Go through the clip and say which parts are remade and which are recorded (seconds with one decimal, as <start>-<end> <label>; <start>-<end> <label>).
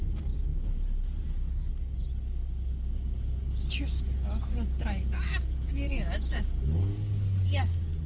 0.0-8.1 recorded